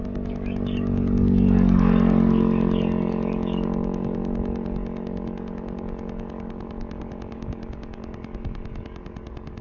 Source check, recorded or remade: remade